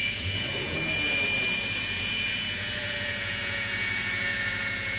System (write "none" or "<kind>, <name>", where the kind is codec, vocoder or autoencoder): vocoder, Vocos